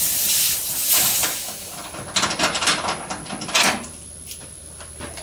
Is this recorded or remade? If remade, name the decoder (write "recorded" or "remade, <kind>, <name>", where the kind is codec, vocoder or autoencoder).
recorded